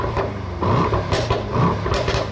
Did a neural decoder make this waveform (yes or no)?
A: no